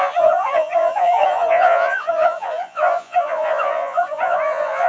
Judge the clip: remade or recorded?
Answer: remade